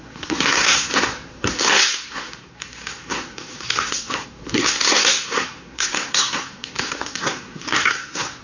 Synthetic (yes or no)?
yes